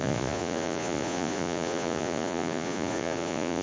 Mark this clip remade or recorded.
remade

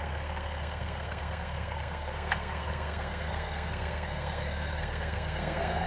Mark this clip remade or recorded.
remade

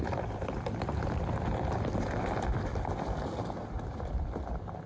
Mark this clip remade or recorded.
recorded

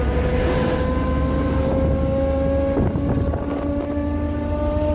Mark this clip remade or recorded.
recorded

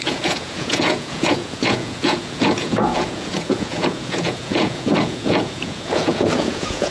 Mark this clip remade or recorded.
remade